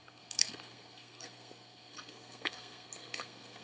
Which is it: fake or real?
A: fake